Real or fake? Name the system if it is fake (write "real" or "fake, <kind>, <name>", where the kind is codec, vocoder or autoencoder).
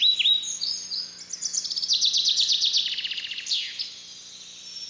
real